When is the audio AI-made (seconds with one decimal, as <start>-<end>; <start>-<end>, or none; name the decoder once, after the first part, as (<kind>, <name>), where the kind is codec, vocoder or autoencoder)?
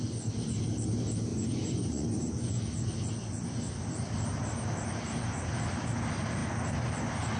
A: 1.3-2.6 (vocoder, Vocos)